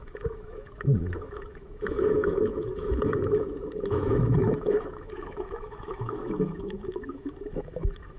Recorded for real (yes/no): no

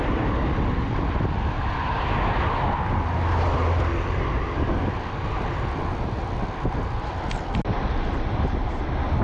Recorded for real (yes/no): yes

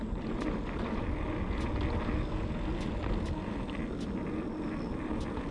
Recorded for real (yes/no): yes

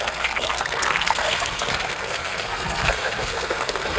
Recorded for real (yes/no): no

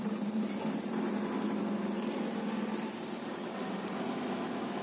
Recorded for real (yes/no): yes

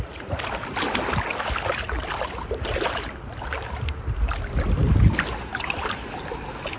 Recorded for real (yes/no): yes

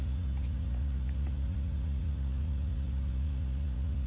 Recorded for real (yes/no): no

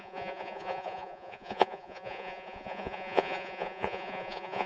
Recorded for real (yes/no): no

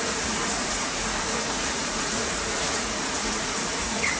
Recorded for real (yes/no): no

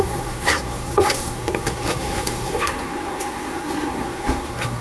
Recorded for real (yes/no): no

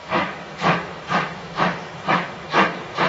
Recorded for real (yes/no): no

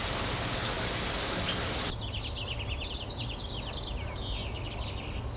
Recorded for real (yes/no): yes